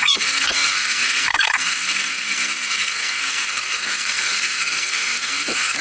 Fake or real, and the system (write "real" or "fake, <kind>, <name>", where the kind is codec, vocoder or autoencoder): fake, codec, SNAC